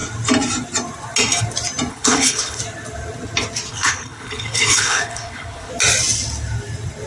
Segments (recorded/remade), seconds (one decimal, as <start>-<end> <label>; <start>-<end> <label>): 0.0-1.9 recorded; 1.9-2.6 remade; 2.6-3.7 recorded; 3.7-5.7 remade; 5.7-7.1 recorded

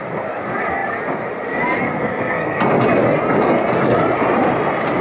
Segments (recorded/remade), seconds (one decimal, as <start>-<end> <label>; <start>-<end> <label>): 0.0-1.9 recorded; 1.9-2.6 remade; 2.6-5.0 recorded

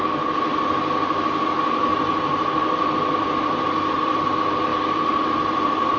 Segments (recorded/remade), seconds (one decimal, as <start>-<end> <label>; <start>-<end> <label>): 0.0-1.9 recorded; 1.9-4.3 remade; 4.3-4.7 recorded; 4.7-6.0 remade